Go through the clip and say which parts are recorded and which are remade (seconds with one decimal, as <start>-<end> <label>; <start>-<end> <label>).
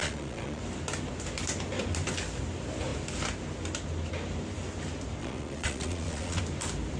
0.0-0.6 remade; 0.6-5.2 recorded; 5.2-6.4 remade; 6.4-7.0 recorded